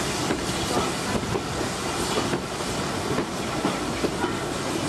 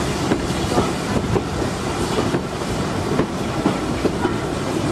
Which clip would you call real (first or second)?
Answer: first